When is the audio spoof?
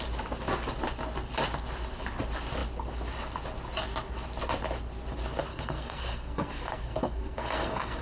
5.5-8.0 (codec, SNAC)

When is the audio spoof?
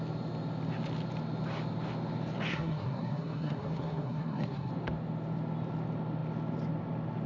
2.5-4.7 (codec, SNAC)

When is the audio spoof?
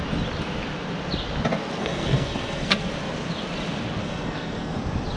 1.8-2.9 (codec, SNAC); 4.0-4.8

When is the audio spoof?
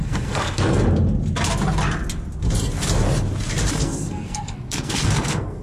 0.0-0.8 (codec, SNAC); 3.7-5.6